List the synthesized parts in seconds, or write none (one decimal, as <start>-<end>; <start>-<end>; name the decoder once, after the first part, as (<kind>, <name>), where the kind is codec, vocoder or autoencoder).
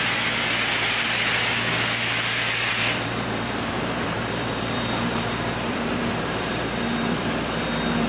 2.7-7.6 (vocoder, BigVGAN v2)